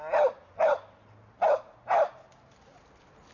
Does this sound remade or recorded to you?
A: recorded